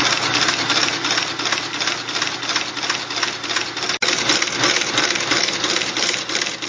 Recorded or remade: recorded